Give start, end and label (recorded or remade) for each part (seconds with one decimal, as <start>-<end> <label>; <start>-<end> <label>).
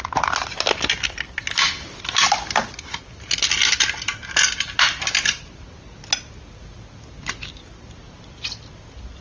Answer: 0.0-9.2 recorded